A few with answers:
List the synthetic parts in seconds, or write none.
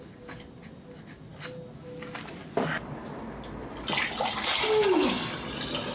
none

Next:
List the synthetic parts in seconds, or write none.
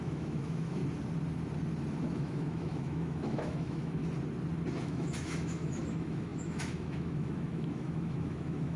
0.0-0.8 (autoencoder, DAC-VAE); 2.0-4.0; 4.8-8.8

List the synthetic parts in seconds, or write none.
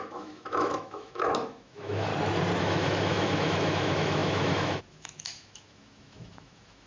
0.0-2.1 (autoencoder, DAC-VAE); 2.6-6.9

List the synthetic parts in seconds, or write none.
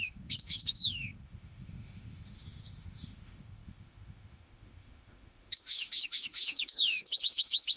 0.0-7.8 (autoencoder, DAC-VAE)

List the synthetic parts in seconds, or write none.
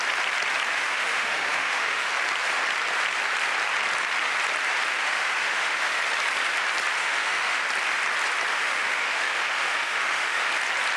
0.7-2.1 (autoencoder, DAC-VAE); 5.0-6.0; 7.0-7.6; 8.5-10.5